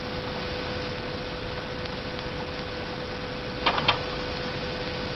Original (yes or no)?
yes